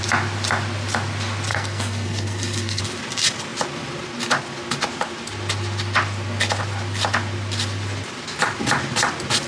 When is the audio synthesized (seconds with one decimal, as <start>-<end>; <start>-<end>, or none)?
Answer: 1.5-2.8